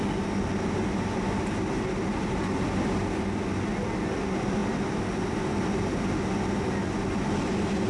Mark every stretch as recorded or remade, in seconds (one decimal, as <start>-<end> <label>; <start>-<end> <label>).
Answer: 0.0-7.9 recorded